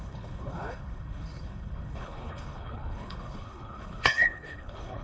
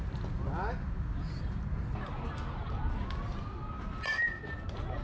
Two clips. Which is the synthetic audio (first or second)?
first